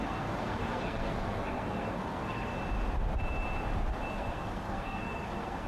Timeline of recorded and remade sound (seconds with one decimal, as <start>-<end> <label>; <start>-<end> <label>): 0.0-2.5 remade; 2.5-4.1 recorded; 4.1-5.7 remade